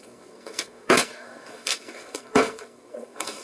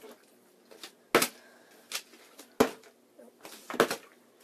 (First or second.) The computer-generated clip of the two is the first